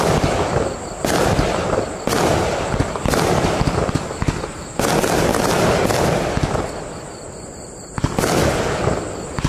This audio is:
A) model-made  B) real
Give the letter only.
B